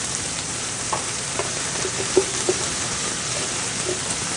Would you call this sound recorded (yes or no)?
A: no